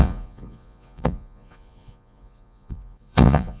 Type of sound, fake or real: fake